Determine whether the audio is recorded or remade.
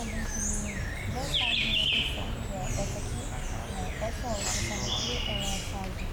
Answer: recorded